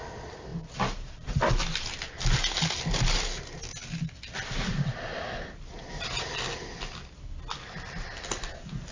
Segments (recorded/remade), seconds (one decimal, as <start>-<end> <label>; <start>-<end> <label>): 0.0-0.5 recorded; 0.5-2.4 remade; 2.4-8.9 recorded